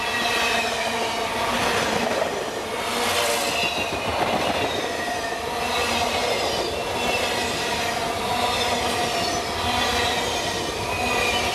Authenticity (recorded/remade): recorded